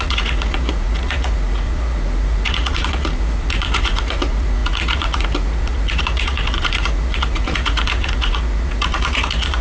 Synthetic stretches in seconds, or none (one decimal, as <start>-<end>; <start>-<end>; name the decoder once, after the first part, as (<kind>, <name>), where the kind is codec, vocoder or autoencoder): 0.0-9.6 (vocoder, Vocos)